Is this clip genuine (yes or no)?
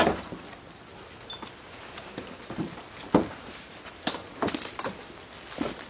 yes